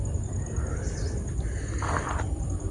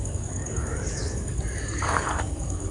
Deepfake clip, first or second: second